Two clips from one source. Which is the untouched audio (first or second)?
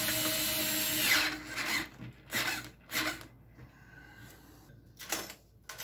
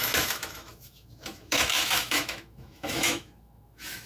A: first